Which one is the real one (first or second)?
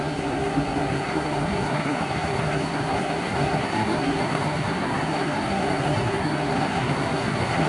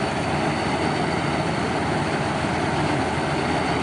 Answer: second